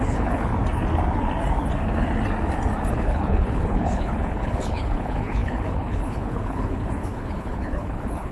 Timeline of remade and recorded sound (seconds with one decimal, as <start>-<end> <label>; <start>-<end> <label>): 0.0-0.5 remade; 0.5-2.9 recorded; 2.9-8.3 remade